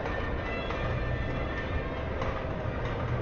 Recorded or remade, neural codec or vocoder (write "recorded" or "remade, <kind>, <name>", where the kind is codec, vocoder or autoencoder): recorded